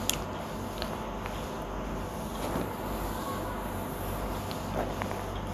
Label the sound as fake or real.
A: real